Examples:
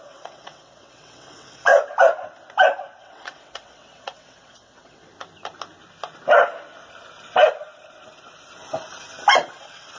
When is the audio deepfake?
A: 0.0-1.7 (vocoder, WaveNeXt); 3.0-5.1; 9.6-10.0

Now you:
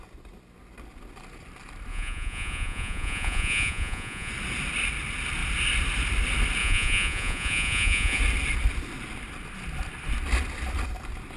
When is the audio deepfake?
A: 1.9-4.3 (vocoder, Vocos); 6.6-8.2

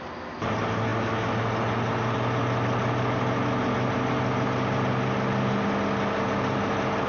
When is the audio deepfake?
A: none

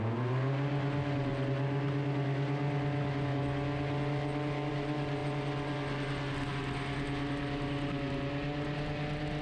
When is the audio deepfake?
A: none